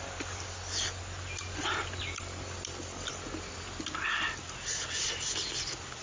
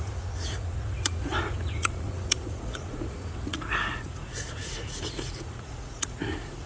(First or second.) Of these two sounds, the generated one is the second